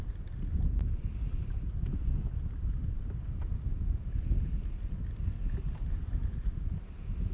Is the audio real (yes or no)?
yes